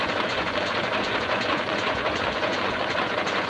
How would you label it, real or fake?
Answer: fake